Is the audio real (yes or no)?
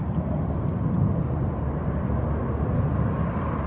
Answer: yes